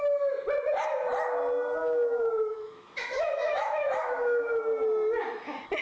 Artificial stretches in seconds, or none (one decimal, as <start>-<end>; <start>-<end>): 1.8-4.6